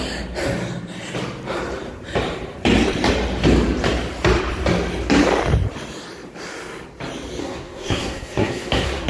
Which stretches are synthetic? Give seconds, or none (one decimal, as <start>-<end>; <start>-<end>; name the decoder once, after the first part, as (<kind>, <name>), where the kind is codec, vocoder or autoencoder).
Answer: 7.4-9.1 (codec, SNAC)

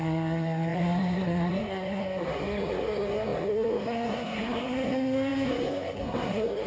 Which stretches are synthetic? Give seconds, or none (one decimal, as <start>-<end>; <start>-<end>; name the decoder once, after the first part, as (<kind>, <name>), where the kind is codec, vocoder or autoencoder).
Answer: 0.0-6.7 (codec, SNAC)

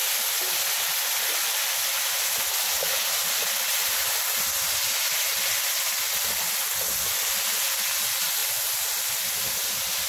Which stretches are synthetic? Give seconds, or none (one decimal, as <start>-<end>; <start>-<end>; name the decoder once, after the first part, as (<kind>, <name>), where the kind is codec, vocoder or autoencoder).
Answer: none

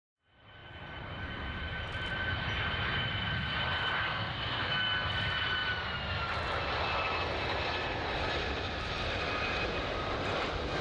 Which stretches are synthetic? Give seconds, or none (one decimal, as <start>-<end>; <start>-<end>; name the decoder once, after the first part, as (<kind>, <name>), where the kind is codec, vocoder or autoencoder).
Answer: 4.0-5.1 (codec, SNAC)

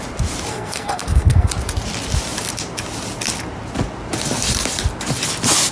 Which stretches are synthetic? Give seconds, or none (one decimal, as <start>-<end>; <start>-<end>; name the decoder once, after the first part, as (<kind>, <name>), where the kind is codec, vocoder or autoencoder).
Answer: 0.5-1.5 (codec, SNAC)

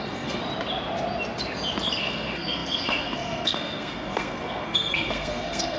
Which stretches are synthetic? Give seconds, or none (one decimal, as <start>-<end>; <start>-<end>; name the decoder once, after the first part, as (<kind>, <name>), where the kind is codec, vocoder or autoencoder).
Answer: 0.0-0.4 (codec, SNAC); 2.0-5.8

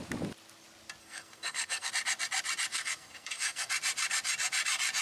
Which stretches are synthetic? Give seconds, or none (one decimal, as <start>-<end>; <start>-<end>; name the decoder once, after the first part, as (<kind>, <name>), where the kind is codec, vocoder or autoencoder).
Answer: 1.0-1.9 (codec, SNAC); 2.7-3.7

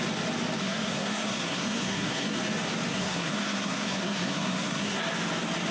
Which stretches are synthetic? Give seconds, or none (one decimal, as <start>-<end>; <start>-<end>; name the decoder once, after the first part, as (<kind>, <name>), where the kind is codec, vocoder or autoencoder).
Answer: 0.6-2.4 (codec, SNAC); 2.9-5.0